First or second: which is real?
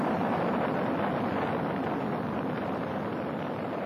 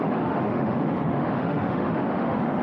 first